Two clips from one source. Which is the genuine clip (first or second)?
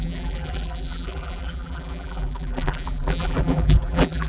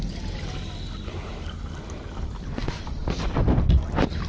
second